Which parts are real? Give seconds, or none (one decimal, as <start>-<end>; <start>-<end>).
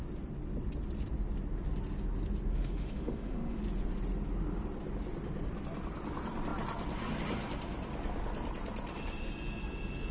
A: 0.0-2.5; 3.6-10.1